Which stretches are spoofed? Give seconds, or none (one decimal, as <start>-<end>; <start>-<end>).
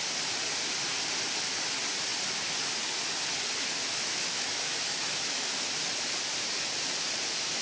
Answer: 3.8-5.5